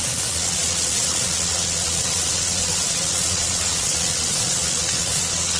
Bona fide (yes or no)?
no